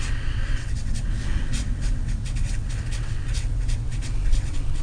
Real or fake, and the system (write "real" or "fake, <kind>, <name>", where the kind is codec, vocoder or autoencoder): fake, vocoder, WaveNeXt